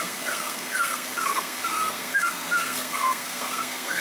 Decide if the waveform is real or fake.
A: fake